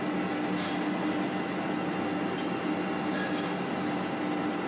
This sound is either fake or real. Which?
real